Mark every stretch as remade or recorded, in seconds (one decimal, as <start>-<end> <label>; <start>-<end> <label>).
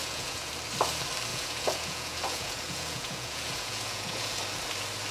0.0-0.5 remade; 0.5-1.3 recorded; 1.3-4.4 remade; 4.4-5.1 recorded